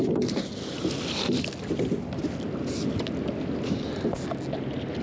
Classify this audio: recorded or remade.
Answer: recorded